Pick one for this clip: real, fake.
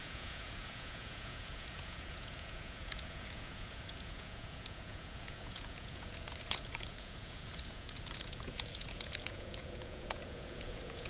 fake